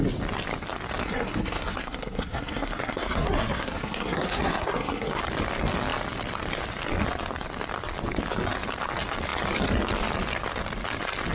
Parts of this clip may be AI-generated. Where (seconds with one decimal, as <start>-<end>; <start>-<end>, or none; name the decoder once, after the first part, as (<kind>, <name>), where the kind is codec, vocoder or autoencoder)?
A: 1.0-5.2 (codec, SNAC)